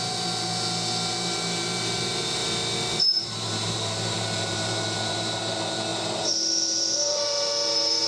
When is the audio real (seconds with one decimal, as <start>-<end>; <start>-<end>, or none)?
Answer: 0.5-1.1; 2.4-3.0